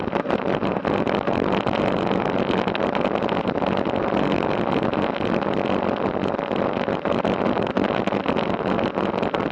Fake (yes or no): no